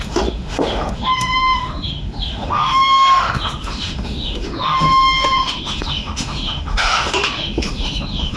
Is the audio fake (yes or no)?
yes